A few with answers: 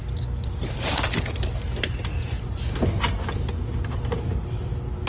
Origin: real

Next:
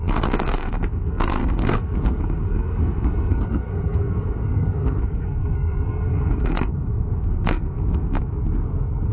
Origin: fake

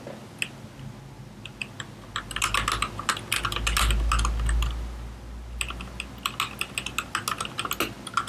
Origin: real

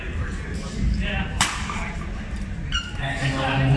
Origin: real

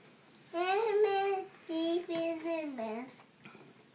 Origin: real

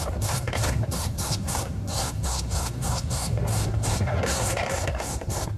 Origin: fake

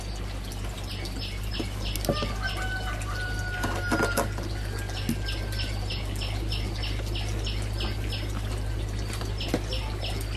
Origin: real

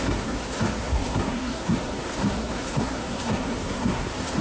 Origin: fake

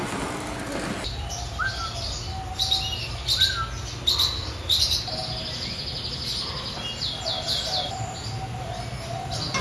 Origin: real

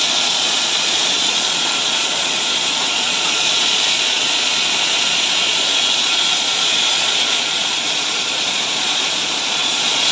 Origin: fake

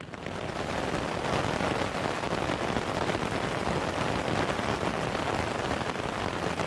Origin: real